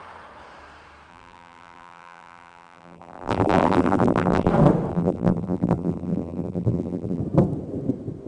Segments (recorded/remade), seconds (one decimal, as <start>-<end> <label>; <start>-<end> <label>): 0.0-1.1 recorded; 1.1-4.5 remade; 4.5-4.9 recorded; 4.9-7.2 remade; 7.2-8.3 recorded